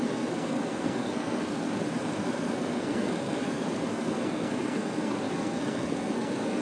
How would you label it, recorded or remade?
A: remade